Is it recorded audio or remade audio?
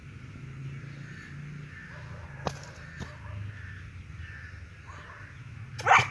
recorded